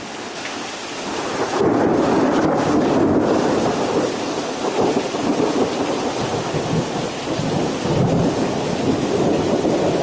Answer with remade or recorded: recorded